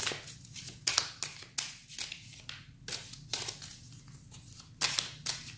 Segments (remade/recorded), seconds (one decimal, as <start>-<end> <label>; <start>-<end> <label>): 0.0-5.6 recorded